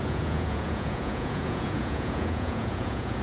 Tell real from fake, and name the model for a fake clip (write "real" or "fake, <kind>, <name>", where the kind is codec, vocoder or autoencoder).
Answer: fake, vocoder, Vocos